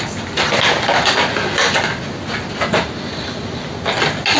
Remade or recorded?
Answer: recorded